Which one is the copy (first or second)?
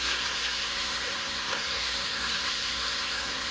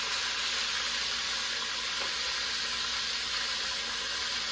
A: first